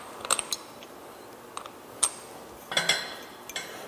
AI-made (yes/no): no